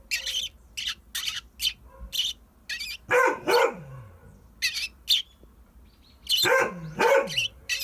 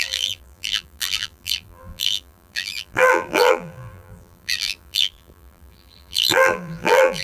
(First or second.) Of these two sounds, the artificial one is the second